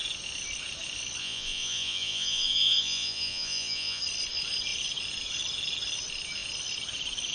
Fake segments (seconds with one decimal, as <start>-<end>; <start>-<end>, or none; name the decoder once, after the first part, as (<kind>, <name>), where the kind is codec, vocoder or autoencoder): 1.2-4.0 (vocoder, Vocos)